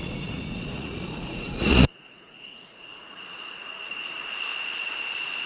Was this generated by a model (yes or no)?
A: yes